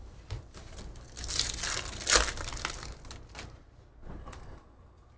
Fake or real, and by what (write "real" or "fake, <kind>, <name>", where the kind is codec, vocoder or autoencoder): real